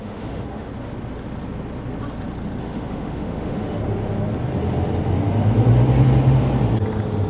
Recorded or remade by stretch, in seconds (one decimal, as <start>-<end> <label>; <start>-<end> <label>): 0.0-0.7 remade; 0.7-2.6 recorded; 2.6-3.8 remade; 3.8-7.3 recorded